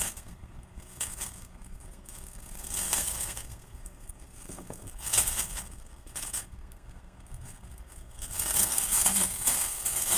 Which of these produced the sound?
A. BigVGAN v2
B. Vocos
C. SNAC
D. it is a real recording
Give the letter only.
C